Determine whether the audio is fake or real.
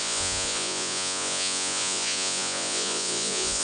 fake